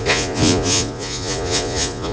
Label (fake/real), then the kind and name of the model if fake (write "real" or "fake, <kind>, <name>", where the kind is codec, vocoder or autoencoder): fake, vocoder, Vocos